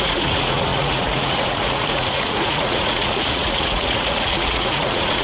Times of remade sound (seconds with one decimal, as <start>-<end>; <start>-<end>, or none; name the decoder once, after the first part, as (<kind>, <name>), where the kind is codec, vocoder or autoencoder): 0.0-5.2 (vocoder, Vocos)